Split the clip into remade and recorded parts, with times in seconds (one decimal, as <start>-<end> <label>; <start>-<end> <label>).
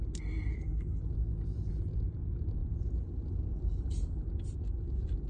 0.0-0.5 recorded; 0.5-1.0 remade; 1.0-5.3 recorded